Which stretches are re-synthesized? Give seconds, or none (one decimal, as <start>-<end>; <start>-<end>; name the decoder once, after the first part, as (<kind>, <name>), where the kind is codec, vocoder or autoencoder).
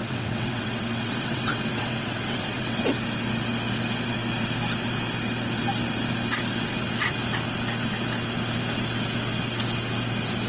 0.0-2.8 (vocoder, WaveNeXt)